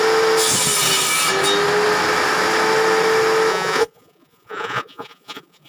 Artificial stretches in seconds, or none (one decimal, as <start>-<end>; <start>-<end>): 3.5-5.7

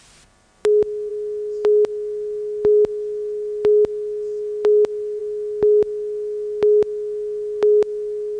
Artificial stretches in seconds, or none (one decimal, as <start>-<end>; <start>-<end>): none